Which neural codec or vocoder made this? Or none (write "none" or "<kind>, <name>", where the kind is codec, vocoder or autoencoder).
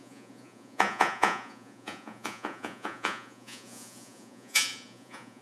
vocoder, Vocos